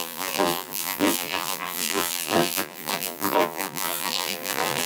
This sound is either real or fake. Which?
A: fake